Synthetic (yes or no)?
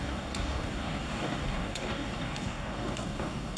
yes